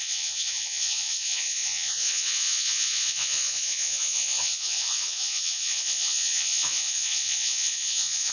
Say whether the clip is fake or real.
fake